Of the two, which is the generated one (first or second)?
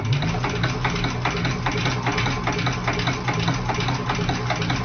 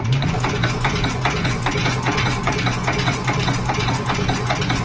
second